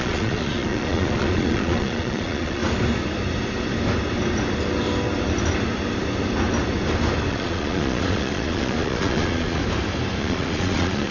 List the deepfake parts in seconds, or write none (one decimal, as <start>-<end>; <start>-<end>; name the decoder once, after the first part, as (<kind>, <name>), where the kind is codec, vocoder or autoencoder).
0.0-2.6 (vocoder, Vocos); 7.3-9.6; 10.2-11.1